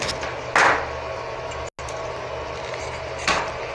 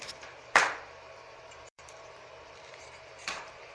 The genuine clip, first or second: first